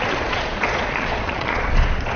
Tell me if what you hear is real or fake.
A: fake